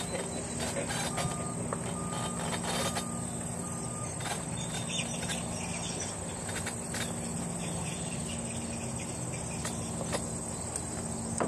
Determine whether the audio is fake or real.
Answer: real